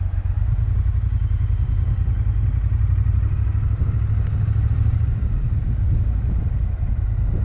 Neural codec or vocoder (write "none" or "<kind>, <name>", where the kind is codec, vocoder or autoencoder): none